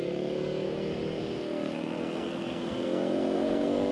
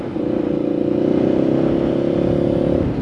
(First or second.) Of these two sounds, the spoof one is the first